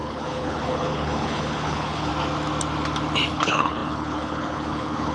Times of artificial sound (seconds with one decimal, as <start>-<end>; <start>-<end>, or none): 0.0-2.1; 3.3-5.1